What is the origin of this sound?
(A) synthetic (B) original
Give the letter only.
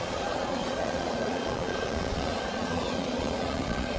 A